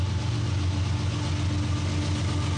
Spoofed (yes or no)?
no